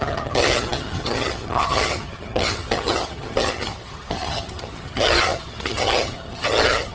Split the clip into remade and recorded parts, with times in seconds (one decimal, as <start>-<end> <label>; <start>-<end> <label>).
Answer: 0.0-6.9 remade